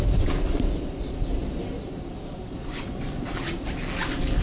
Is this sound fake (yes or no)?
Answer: no